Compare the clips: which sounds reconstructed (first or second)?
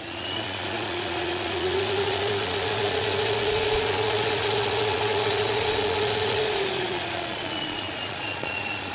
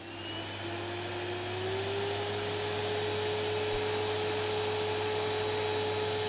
first